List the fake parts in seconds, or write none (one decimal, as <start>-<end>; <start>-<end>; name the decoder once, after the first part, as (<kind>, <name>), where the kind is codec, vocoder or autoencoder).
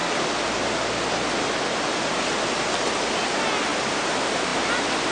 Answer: none